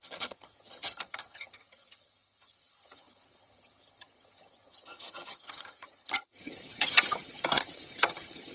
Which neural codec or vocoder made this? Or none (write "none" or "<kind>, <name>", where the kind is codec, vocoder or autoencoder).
vocoder, HiFi-GAN